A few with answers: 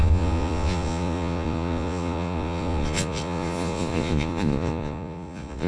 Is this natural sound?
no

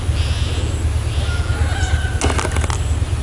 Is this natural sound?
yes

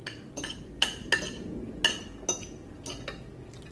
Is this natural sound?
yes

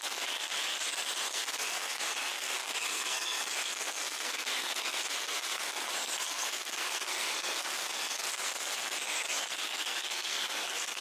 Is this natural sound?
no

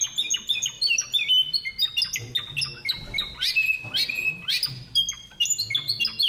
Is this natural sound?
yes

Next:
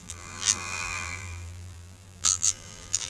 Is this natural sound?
no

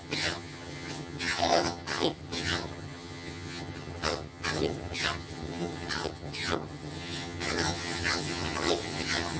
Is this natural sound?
no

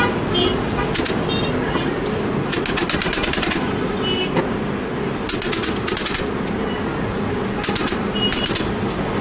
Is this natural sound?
yes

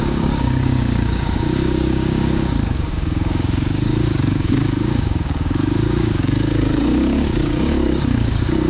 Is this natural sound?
no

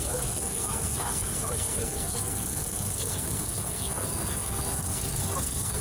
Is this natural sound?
no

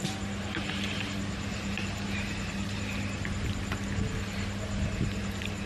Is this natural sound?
yes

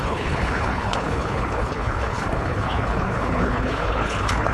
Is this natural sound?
no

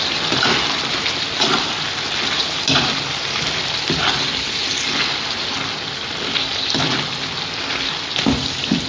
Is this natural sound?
yes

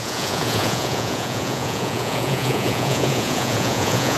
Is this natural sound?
no